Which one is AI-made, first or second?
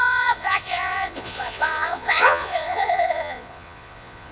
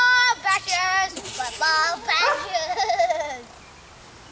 first